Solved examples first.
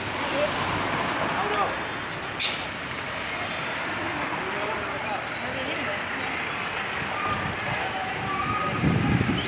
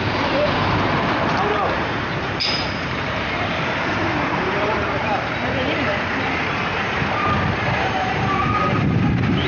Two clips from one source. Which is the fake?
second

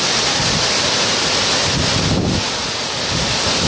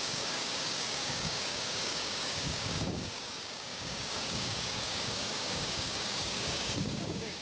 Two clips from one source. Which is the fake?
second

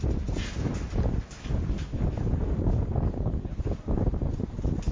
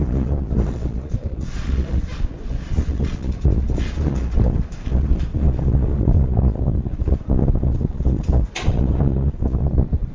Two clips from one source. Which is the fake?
second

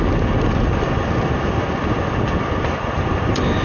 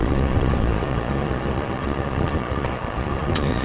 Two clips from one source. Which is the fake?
second